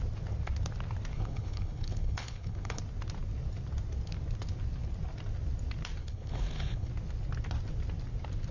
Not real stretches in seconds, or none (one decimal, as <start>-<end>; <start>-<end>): 1.1-2.8; 6.0-6.9